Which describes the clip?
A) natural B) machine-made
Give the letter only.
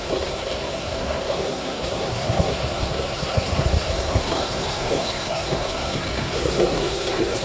B